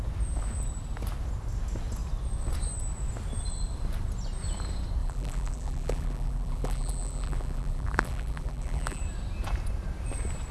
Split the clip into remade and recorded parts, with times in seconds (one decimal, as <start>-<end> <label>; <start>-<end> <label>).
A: 0.0-5.0 recorded; 5.0-9.0 remade; 9.0-10.5 recorded